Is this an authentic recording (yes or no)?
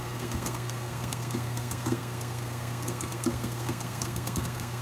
no